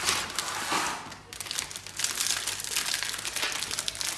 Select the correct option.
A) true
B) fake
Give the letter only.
A